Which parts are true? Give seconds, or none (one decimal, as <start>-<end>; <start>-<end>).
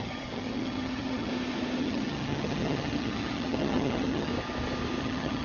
1.3-1.8; 4.3-5.0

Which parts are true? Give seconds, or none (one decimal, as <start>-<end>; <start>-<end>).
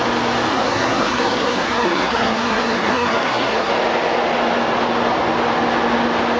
0.0-0.5; 3.7-6.4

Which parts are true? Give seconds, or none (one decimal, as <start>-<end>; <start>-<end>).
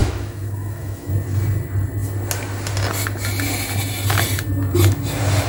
1.1-5.5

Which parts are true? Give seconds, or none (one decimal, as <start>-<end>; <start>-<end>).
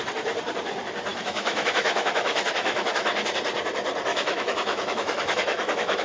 0.0-1.1; 3.2-4.1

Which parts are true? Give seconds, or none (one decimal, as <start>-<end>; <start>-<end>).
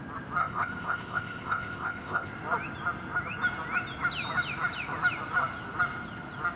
0.0-0.4; 2.3-6.5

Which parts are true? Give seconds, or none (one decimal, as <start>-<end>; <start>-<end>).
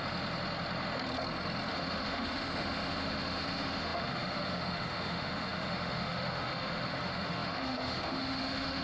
0.0-1.7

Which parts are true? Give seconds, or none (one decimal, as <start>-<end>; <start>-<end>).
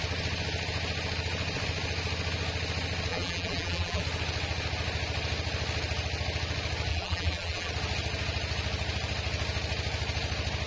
0.0-3.1; 4.0-6.9; 7.7-10.7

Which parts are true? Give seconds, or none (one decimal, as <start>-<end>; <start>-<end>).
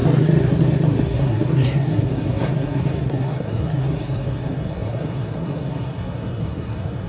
none